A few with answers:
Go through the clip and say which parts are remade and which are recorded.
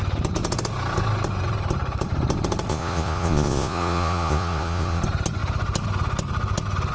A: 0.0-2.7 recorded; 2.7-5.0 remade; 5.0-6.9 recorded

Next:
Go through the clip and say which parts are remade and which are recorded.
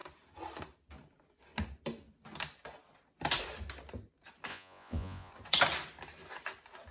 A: 0.0-4.5 recorded; 4.5-5.3 remade; 5.3-6.9 recorded